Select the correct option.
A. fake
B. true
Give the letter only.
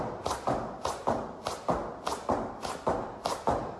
B